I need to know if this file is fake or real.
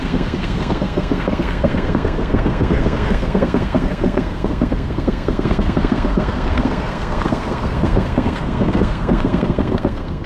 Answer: fake